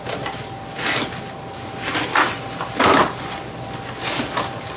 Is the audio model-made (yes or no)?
no